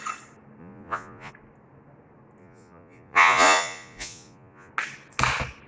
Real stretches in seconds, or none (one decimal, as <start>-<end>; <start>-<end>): 0.0-0.6; 1.3-2.4; 4.7-5.7